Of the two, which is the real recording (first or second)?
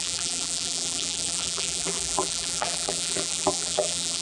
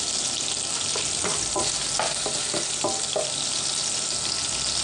second